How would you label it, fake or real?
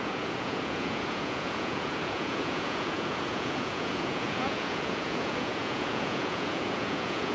fake